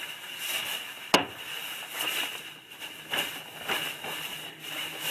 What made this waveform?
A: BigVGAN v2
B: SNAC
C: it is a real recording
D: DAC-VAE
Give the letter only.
C